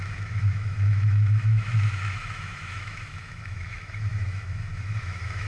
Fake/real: fake